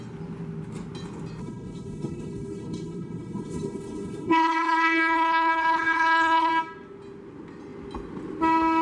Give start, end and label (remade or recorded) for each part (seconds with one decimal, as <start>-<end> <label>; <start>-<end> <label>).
0.0-1.4 recorded; 1.4-6.5 remade; 6.5-8.8 recorded